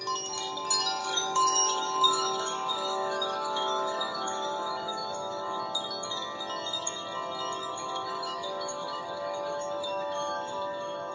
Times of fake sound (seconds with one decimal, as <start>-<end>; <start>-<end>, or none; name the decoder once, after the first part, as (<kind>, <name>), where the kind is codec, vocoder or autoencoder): 1.0-5.6 (autoencoder, DAC-VAE); 7.7-11.1